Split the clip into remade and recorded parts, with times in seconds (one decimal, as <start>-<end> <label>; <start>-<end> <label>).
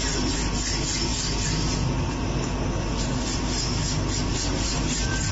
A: 0.0-5.3 recorded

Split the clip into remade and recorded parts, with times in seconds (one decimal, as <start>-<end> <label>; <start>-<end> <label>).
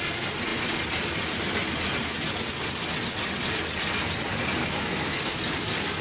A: 0.0-4.6 recorded; 4.6-5.4 remade; 5.4-6.0 recorded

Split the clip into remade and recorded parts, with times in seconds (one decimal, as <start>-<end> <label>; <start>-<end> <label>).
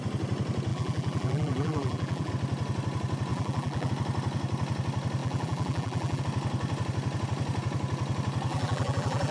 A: 0.0-0.7 recorded; 0.7-2.3 remade; 2.3-3.3 recorded; 3.3-3.9 remade; 3.9-5.2 recorded; 5.2-6.2 remade; 6.2-8.5 recorded; 8.5-9.3 remade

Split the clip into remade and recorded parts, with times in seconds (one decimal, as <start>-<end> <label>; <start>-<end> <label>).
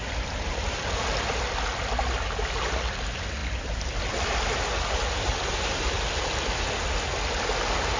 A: 0.0-3.4 recorded; 3.4-4.0 remade; 4.0-8.0 recorded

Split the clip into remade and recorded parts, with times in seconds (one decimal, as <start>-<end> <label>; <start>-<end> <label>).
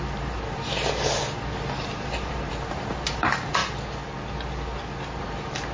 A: 0.0-0.7 remade; 0.7-2.3 recorded; 2.3-3.6 remade; 3.6-5.2 recorded; 5.2-5.7 remade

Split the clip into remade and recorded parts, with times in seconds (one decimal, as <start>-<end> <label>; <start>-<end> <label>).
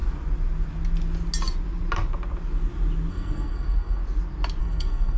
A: 0.0-3.1 recorded; 3.1-4.0 remade; 4.0-4.6 recorded; 4.6-5.2 remade